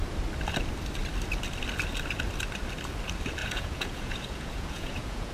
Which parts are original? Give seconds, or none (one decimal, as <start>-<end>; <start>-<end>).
0.0-3.4